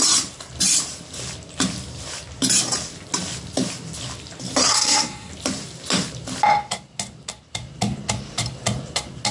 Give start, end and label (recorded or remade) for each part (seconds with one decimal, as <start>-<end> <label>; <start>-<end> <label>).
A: 0.0-4.7 recorded; 4.7-5.3 remade; 5.3-9.3 recorded